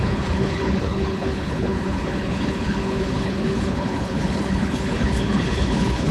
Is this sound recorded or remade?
remade